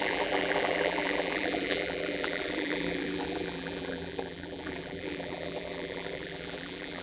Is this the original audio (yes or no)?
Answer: no